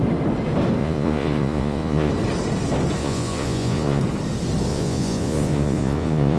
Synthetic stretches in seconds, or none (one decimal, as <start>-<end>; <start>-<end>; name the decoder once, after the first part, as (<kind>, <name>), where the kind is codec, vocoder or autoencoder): 0.8-2.1 (vocoder, Vocos); 3.0-4.0; 4.7-6.4